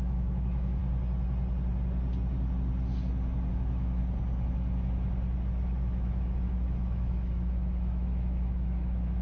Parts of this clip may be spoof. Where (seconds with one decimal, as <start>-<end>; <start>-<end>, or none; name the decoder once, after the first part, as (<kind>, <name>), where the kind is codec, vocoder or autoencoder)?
0.0-0.8 (autoencoder, DAC-VAE); 3.5-4.0; 5.5-9.2